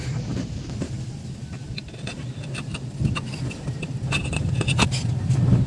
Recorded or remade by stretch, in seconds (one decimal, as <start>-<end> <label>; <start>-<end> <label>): 0.0-1.0 remade; 1.0-5.7 recorded